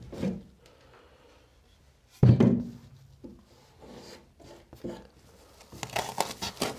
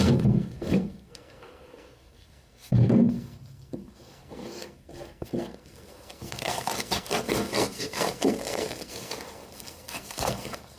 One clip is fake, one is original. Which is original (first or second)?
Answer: first